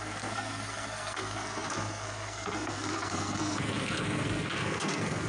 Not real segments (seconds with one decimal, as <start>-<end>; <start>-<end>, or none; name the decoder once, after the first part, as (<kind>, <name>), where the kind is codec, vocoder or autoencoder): 0.0-5.3 (codec, SNAC)

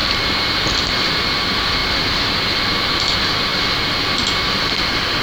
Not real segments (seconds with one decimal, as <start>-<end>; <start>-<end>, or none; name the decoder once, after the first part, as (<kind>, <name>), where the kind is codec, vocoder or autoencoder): 0.0-3.5 (vocoder, BigVGAN v2); 4.0-5.2

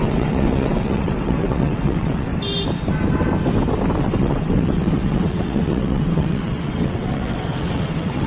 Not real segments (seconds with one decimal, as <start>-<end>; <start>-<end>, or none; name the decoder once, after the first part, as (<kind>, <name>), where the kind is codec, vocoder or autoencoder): 0.0-2.3 (vocoder, WaveNeXt); 4.0-8.3

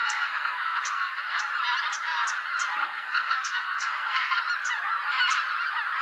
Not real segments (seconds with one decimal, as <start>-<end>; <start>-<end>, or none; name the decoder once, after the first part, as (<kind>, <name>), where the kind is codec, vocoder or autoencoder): 0.0-1.4 (codec, SNAC); 2.8-4.4

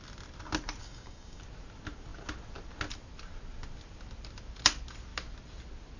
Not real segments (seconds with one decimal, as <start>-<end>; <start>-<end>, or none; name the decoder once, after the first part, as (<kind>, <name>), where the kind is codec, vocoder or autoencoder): 0.8-1.4 (codec, DAC)